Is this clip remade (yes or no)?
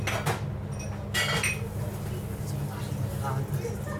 no